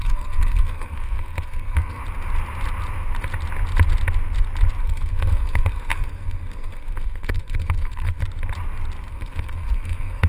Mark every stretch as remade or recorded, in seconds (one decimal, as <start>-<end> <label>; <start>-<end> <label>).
0.0-2.0 remade; 2.0-4.8 recorded; 4.8-8.2 remade; 8.2-9.1 recorded; 9.1-10.3 remade

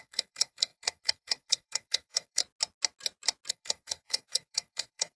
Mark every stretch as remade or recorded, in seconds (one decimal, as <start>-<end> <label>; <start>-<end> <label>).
0.0-2.4 remade; 2.4-3.5 recorded; 3.5-5.2 remade

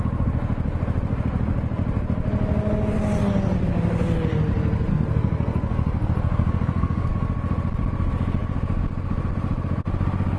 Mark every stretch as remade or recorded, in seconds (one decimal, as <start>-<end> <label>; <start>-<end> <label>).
0.0-4.9 recorded; 4.9-7.1 remade; 7.1-10.4 recorded

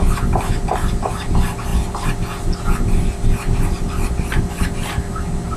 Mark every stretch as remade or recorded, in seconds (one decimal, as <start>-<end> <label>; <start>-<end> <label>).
0.0-5.6 recorded

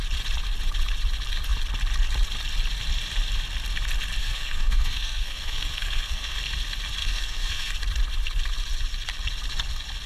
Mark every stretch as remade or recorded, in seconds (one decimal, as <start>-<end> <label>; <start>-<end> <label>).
0.0-4.2 recorded; 4.2-6.4 remade; 6.4-7.0 recorded; 7.0-7.7 remade; 7.7-10.1 recorded

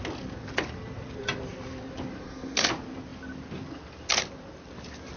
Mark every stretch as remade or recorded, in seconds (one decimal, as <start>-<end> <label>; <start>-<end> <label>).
0.0-2.2 recorded; 2.2-2.7 remade; 2.7-5.2 recorded